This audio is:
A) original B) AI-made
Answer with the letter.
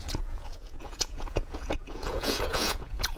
B